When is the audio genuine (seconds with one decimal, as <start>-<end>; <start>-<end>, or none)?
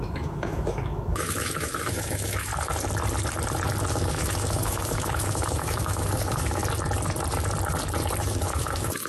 2.5-3.9; 6.6-8.2